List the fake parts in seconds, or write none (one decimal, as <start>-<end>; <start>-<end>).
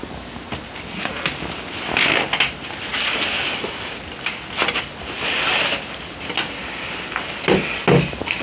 none